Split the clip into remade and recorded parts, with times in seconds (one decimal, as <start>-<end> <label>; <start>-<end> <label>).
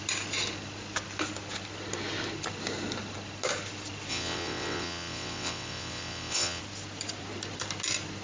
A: 0.0-4.1 recorded; 4.1-6.6 remade; 6.6-8.2 recorded